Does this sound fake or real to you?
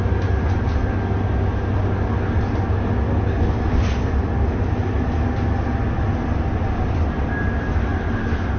real